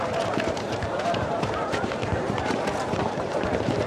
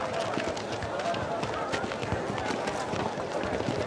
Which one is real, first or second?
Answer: second